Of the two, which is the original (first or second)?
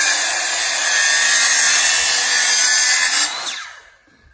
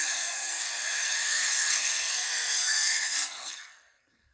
first